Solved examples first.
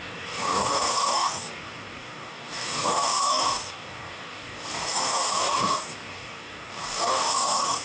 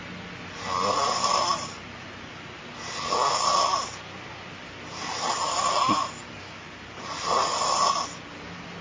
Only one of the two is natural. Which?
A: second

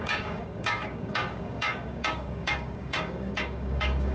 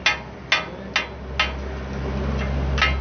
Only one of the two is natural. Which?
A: second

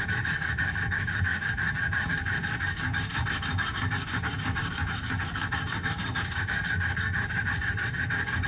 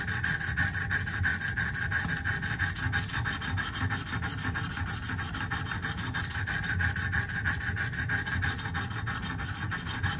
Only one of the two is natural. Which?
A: second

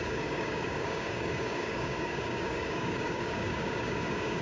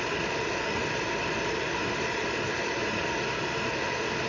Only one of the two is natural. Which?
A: second